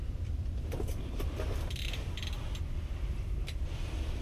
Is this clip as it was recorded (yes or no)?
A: no